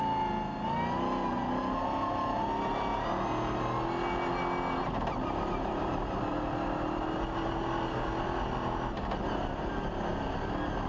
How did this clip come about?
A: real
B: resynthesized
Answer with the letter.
A